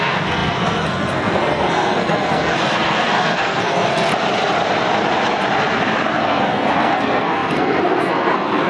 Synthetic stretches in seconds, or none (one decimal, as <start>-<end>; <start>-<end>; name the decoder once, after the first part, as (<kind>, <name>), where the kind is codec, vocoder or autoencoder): 0.0-4.1 (codec, SNAC); 6.2-8.7